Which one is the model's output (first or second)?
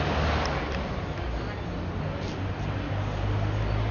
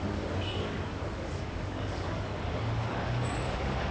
second